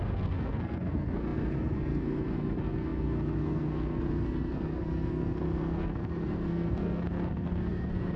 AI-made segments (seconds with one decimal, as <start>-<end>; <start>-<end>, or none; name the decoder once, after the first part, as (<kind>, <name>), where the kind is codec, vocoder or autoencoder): 0.0-8.2 (codec, SNAC)